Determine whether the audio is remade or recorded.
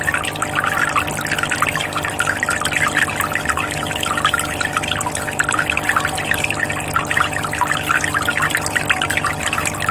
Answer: recorded